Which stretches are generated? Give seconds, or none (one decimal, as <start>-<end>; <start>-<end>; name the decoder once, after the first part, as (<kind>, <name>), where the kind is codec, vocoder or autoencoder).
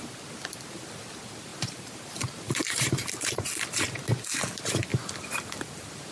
1.5-3.1 (vocoder, BigVGAN v2)